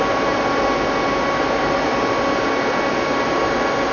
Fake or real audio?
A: real